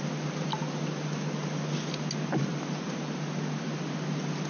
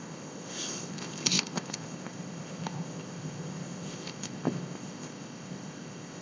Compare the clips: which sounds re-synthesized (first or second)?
second